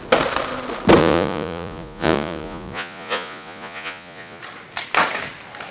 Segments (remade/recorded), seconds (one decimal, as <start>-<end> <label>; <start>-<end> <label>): 0.0-1.0 recorded; 1.0-4.4 remade; 4.4-5.7 recorded